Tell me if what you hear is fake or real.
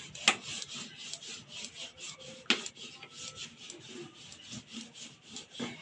real